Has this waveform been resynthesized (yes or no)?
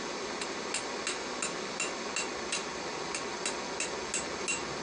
no